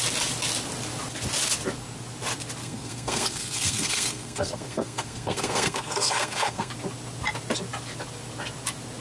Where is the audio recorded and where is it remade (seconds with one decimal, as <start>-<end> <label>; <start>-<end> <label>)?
0.0-2.6 recorded; 2.6-6.7 remade; 6.7-9.0 recorded